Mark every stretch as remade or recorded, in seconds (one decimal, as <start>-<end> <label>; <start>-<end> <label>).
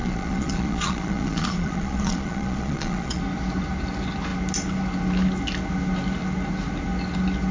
0.0-3.2 remade; 3.2-7.5 recorded